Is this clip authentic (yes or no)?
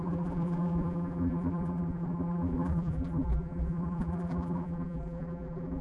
no